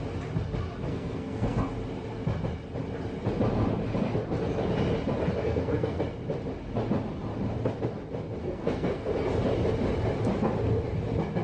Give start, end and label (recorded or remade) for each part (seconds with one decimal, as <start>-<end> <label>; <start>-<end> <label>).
0.0-0.9 recorded; 0.9-1.7 remade; 1.7-5.4 recorded; 5.4-6.0 remade; 6.0-8.4 recorded; 8.4-9.1 remade; 9.1-11.4 recorded